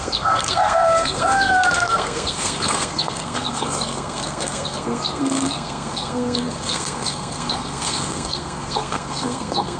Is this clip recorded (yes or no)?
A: no